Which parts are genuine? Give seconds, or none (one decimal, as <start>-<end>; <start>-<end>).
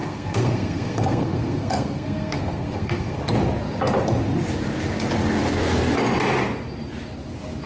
3.2-7.7